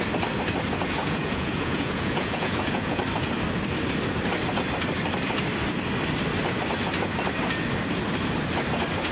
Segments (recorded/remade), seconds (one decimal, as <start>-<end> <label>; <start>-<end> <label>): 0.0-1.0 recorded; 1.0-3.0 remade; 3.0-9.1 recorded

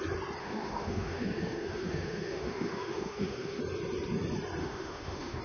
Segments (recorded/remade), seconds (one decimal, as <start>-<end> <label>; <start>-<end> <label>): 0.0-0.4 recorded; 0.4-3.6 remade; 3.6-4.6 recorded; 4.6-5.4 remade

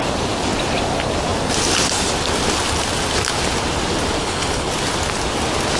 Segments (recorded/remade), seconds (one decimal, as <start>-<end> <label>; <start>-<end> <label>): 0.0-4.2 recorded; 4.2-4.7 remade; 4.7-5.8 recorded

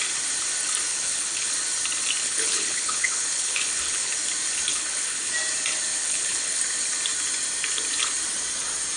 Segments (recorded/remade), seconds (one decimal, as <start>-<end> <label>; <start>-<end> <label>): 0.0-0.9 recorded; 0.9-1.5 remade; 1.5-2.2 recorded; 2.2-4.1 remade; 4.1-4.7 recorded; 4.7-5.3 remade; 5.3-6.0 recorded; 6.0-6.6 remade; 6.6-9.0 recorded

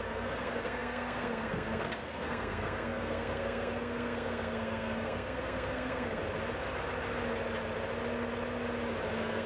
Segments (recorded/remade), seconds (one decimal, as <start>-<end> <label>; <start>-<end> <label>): 0.0-6.2 remade; 6.2-9.1 recorded; 9.1-9.5 remade

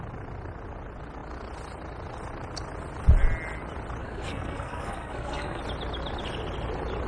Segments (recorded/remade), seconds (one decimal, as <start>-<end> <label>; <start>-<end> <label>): 0.0-4.0 recorded; 4.0-5.6 remade; 5.6-7.1 recorded

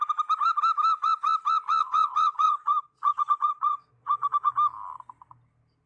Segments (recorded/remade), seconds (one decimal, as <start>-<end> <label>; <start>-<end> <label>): 0.0-1.8 recorded; 1.8-4.5 remade; 4.5-5.9 recorded